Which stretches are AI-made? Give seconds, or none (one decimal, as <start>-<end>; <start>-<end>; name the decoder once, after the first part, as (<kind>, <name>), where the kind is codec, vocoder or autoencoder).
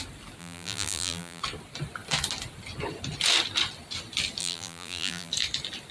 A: 0.4-1.4 (vocoder, BigVGAN v2); 4.4-5.3